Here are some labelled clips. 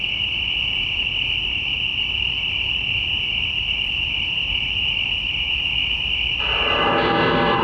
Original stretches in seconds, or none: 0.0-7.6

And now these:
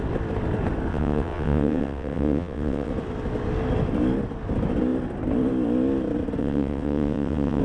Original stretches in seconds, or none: 0.0-0.9; 2.9-6.4

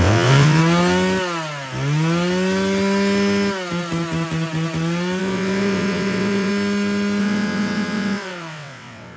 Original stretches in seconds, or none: 0.6-5.2; 6.5-7.2

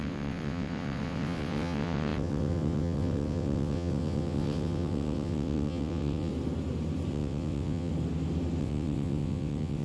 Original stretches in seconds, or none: 6.3-7.1; 7.9-8.6

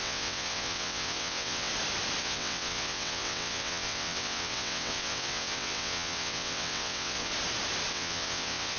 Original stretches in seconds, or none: 1.7-2.2; 7.3-7.9

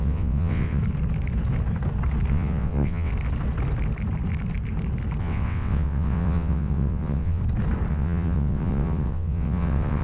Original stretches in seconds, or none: 0.8-2.3; 3.1-5.2; 7.4-7.9

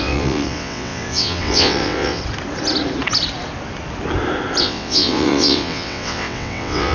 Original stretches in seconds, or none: 2.2-4.6

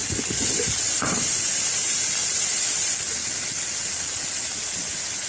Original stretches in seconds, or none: 0.0-5.3